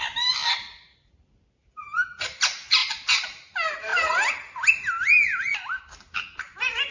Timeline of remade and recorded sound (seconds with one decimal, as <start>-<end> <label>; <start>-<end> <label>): 0.0-6.9 recorded